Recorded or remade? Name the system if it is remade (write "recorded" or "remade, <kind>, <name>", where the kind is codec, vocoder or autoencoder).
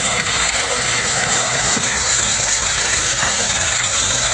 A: remade, codec, SNAC